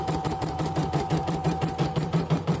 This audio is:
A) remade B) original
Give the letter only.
A